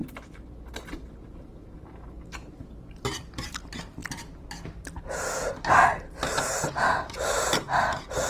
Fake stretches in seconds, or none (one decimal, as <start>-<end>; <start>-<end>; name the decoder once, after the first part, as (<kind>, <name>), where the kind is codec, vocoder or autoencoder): 1.0-8.3 (vocoder, BigVGAN v2)